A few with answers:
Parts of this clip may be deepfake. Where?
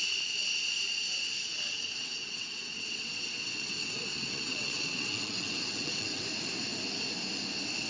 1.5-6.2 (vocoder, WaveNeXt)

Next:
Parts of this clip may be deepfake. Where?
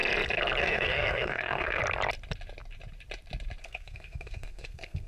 0.6-1.8 (codec, SNAC); 3.6-5.1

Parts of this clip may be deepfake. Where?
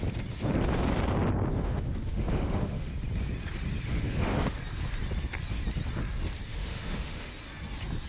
1.5-2.9 (autoencoder, DAC-VAE); 3.9-4.6; 6.5-7.3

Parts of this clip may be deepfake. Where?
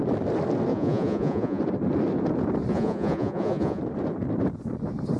0.7-1.6 (vocoder, Vocos); 2.7-3.8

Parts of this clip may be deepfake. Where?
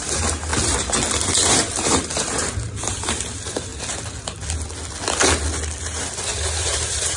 0.0-0.5 (vocoder, BigVGAN v2); 1.5-3.7; 5.8-7.2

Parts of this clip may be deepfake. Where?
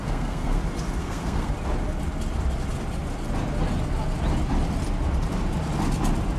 0.0-0.6 (codec, SNAC); 1.0-1.5